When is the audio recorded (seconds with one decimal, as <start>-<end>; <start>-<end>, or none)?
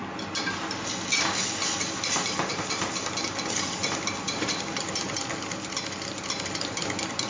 0.0-7.3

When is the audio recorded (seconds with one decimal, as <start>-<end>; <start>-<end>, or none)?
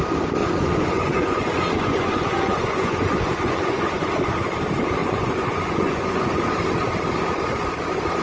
0.0-0.4; 4.3-5.0; 6.4-8.2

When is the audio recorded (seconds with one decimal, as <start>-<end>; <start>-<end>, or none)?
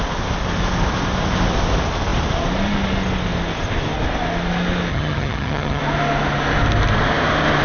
0.0-4.9; 5.8-7.6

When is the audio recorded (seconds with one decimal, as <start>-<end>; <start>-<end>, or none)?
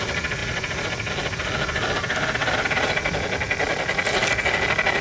0.0-5.0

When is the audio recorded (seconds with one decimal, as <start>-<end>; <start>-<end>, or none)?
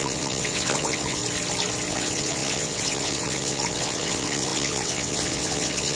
1.2-1.9